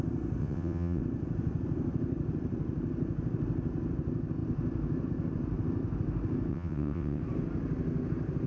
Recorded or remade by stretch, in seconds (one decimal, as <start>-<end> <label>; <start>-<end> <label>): 0.0-0.4 recorded; 0.4-1.0 remade; 1.0-6.5 recorded; 6.5-7.2 remade; 7.2-8.5 recorded